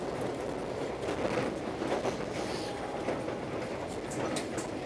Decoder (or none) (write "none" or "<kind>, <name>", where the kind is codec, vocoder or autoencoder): none